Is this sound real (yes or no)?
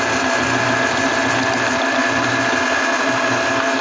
yes